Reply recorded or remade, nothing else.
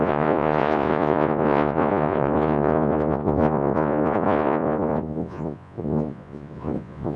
remade